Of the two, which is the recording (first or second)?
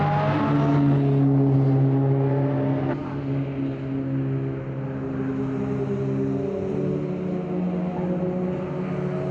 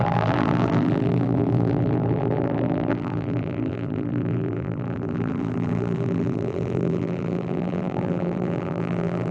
first